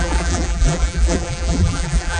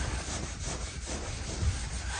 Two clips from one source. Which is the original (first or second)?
second